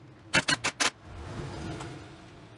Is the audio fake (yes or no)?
no